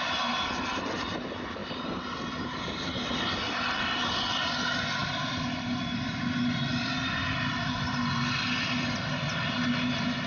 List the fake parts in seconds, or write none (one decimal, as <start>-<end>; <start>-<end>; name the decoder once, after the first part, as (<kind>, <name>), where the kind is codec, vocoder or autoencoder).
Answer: none